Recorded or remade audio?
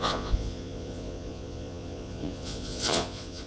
remade